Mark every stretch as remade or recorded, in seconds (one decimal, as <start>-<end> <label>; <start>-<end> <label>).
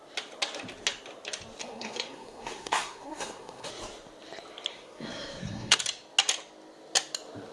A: 0.0-1.6 recorded; 1.6-3.7 remade; 3.7-4.7 recorded; 4.7-5.8 remade; 5.8-7.5 recorded